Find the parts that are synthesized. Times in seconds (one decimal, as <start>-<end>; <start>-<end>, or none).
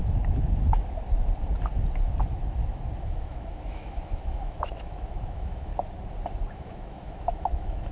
3.0-5.7; 6.5-7.9